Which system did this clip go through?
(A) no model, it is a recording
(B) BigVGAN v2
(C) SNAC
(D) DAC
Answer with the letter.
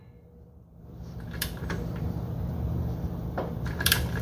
B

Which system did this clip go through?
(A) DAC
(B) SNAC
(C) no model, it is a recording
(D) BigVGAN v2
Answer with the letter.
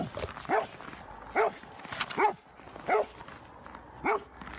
C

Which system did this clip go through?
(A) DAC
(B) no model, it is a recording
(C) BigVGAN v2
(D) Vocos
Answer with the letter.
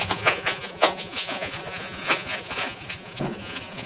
D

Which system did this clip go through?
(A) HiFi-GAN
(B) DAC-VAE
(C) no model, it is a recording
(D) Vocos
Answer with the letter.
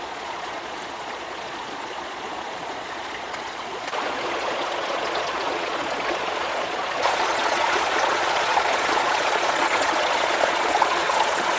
D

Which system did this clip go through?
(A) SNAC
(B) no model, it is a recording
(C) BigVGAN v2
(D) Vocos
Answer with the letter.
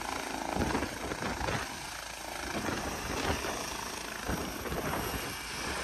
B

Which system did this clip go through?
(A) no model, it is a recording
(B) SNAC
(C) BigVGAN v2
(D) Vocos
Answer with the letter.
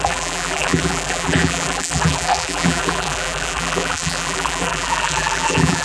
C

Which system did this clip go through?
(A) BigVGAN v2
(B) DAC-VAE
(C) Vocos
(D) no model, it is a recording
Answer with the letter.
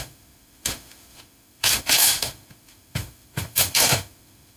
B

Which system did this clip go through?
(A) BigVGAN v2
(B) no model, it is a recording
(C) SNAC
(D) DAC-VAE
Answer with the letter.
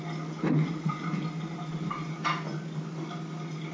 B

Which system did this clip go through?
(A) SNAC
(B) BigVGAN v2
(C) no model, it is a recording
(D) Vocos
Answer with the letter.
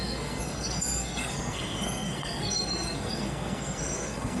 A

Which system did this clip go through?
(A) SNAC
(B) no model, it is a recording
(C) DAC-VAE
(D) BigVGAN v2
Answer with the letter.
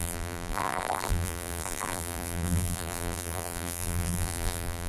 D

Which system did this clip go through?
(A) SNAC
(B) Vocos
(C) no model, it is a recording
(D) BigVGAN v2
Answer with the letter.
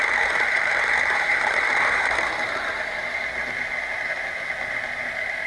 C